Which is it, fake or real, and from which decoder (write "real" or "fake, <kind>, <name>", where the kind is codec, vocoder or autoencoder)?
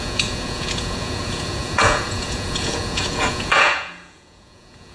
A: fake, vocoder, Vocos